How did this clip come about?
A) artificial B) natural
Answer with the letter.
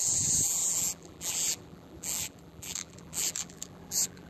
A